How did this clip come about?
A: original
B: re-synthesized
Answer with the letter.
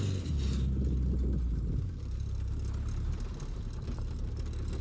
A